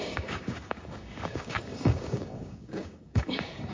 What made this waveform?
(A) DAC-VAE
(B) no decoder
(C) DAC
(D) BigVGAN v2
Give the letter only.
C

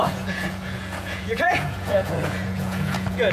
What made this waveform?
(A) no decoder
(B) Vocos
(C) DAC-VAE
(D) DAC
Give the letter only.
B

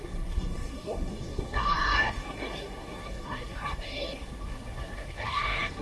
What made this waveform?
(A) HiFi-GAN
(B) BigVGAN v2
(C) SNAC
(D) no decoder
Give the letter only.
C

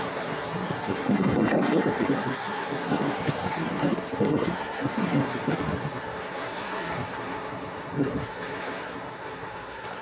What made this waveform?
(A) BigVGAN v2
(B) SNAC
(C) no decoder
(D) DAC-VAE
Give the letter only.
B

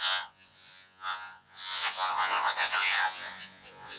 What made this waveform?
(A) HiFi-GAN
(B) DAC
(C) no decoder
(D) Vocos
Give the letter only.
D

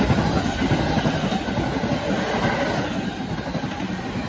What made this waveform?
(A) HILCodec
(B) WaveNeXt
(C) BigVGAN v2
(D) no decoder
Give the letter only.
D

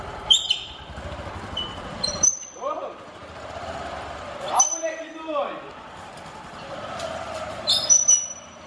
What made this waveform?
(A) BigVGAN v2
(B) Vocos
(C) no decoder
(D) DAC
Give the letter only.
A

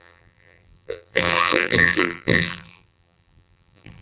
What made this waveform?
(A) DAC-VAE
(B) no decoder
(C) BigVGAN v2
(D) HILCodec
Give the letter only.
C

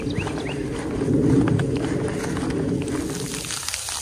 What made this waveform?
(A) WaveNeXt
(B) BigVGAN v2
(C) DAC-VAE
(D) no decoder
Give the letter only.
D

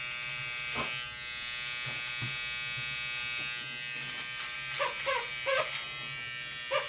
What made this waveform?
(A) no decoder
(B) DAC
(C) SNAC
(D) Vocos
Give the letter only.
A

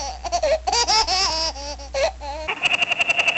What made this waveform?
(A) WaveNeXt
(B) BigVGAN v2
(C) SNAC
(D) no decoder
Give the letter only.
D